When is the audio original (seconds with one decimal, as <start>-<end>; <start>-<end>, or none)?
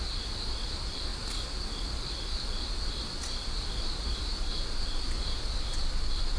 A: 0.0-6.4